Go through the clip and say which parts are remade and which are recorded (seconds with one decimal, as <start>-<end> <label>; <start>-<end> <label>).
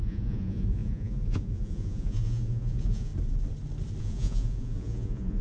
0.0-3.1 remade; 3.1-4.0 recorded; 4.0-5.4 remade